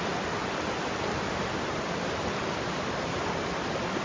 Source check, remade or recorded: recorded